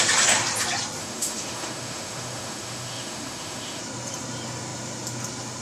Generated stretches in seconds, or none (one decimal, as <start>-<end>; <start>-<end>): 1.0-3.8